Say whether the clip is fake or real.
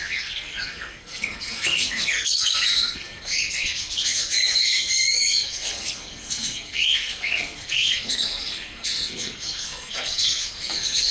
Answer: fake